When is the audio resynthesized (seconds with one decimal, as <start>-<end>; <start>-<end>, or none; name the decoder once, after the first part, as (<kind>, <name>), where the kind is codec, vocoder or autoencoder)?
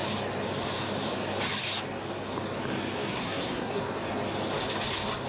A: 3.1-3.8 (codec, SNAC)